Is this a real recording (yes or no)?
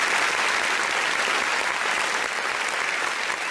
yes